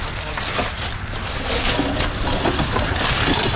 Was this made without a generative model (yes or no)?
yes